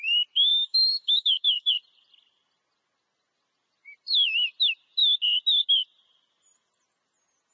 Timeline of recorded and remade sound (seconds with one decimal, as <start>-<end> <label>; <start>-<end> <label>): 0.0-0.5 recorded; 0.5-1.7 remade; 1.7-7.5 recorded

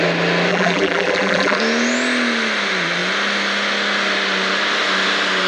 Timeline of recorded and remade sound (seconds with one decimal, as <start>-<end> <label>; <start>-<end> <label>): 0.0-0.5 recorded; 0.5-1.6 remade; 1.6-5.5 recorded

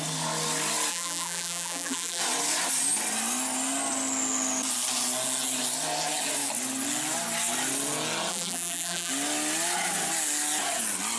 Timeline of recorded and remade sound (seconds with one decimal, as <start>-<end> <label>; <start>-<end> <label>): 0.0-0.9 recorded; 0.9-2.2 remade; 2.2-8.3 recorded; 8.3-9.1 remade; 9.1-11.2 recorded

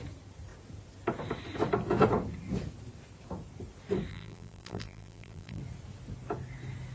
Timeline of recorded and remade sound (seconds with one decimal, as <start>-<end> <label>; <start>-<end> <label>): 0.0-4.1 recorded; 4.1-5.6 remade; 5.6-6.9 recorded

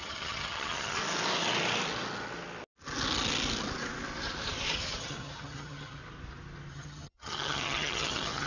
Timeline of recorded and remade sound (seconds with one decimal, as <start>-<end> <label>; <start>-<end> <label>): 0.0-1.0 remade; 1.0-5.0 recorded; 5.0-6.0 remade; 6.0-6.7 recorded; 6.7-8.5 remade

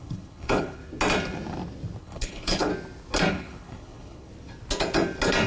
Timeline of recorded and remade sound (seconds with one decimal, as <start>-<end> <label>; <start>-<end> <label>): 0.0-0.8 remade; 0.8-2.0 recorded; 2.0-2.7 remade; 2.7-3.3 recorded; 3.3-4.3 remade; 4.3-5.5 recorded

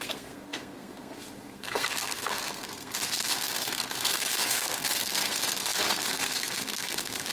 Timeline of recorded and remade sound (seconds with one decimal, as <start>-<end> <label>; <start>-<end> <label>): 0.0-7.3 remade